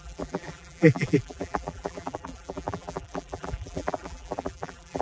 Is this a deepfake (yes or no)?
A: yes